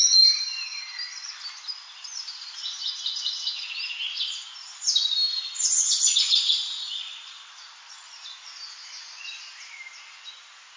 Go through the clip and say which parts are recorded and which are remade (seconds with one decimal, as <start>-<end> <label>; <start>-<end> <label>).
0.0-10.8 recorded